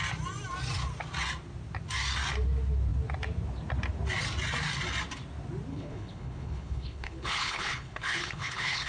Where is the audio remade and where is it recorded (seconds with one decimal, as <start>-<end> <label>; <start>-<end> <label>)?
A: 0.0-5.7 recorded; 5.7-8.9 remade